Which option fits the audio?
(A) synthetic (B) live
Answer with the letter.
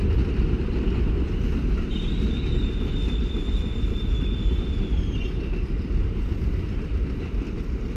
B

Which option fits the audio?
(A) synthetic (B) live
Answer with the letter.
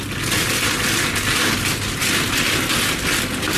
B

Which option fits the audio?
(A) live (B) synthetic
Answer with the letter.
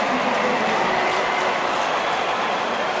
A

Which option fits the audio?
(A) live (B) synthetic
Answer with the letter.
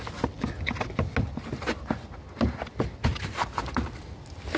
A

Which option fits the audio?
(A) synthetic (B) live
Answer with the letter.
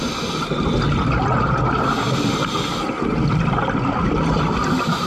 B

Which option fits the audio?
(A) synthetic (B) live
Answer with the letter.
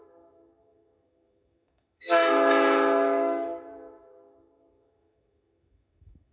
A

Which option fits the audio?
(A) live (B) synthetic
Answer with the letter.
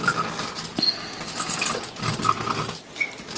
A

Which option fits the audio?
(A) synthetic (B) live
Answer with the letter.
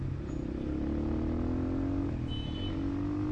B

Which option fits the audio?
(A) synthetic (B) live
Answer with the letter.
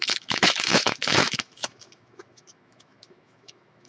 A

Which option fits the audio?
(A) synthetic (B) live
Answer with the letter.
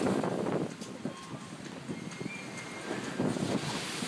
B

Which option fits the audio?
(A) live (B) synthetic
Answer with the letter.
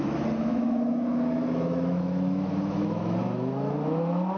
B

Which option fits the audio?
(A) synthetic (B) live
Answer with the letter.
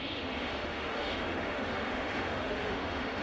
A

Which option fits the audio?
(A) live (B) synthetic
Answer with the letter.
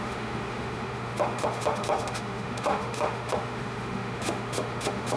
B